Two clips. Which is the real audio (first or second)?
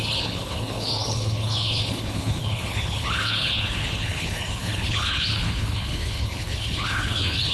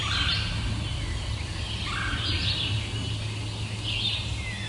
second